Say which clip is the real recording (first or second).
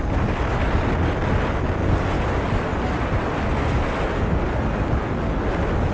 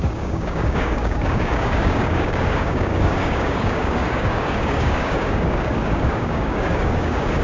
first